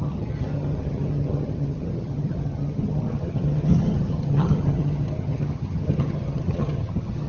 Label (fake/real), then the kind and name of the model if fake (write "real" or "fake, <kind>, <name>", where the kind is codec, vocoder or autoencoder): fake, vocoder, HiFi-GAN